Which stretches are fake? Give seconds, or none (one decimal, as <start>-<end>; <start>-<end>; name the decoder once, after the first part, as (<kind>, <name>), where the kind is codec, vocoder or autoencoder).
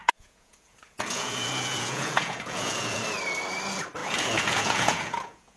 0.0-3.0 (vocoder, Vocos); 4.0-5.6